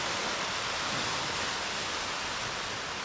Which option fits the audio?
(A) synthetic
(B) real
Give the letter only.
B